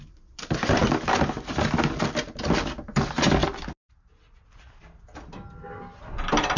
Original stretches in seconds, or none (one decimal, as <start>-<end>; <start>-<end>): 0.0-6.6